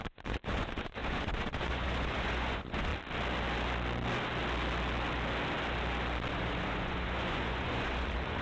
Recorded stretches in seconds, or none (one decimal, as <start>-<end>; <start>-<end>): 2.9-6.3